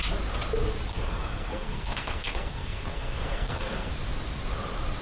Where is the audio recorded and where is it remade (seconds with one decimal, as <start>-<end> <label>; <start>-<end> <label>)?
0.0-0.9 recorded; 0.9-3.9 remade; 3.9-5.0 recorded